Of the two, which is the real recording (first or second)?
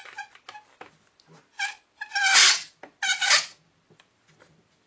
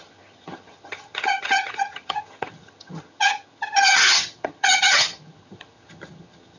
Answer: first